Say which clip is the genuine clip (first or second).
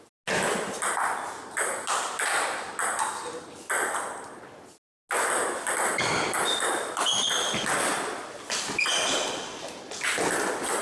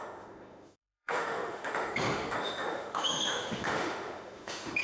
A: first